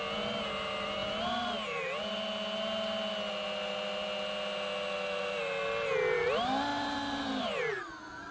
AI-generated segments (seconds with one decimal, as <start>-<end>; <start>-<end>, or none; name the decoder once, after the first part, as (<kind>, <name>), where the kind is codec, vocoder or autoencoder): none